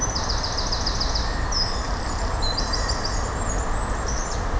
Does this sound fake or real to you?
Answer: real